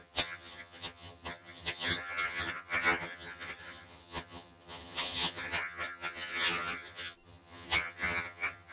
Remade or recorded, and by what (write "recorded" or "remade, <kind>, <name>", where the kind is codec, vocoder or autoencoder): remade, vocoder, HiFi-GAN